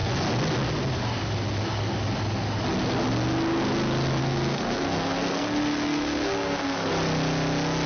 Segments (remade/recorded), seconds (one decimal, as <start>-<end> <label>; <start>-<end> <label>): 0.0-4.2 recorded; 4.2-6.9 remade; 6.9-7.9 recorded